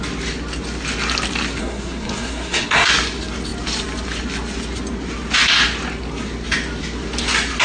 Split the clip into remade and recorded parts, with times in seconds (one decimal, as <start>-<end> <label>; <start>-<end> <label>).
0.0-1.6 recorded; 1.6-2.9 remade; 2.9-7.6 recorded

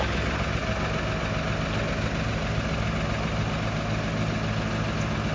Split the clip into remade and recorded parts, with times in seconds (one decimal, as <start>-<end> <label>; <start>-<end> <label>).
0.0-5.3 recorded

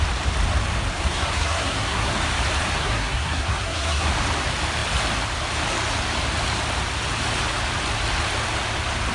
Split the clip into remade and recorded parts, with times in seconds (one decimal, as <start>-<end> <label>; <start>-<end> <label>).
0.0-0.9 recorded; 0.9-2.1 remade; 2.1-2.8 recorded; 2.8-4.1 remade; 4.1-9.1 recorded

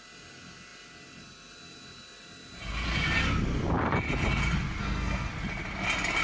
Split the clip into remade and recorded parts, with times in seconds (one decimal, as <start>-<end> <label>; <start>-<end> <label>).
0.0-4.8 recorded; 4.8-5.3 remade; 5.3-6.2 recorded

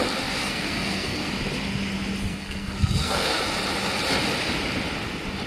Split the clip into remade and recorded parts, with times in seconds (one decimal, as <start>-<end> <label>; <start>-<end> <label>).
0.0-0.4 recorded; 0.4-1.3 remade; 1.3-2.3 recorded; 2.3-3.4 remade; 3.4-5.5 recorded

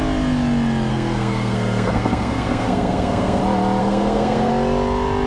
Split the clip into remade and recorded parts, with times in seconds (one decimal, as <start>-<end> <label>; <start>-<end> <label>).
0.0-0.9 recorded; 0.9-3.4 remade; 3.4-3.8 recorded; 3.8-4.5 remade; 4.5-5.3 recorded